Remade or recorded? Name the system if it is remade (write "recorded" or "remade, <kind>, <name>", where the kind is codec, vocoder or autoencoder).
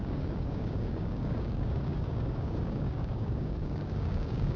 remade, codec, DAC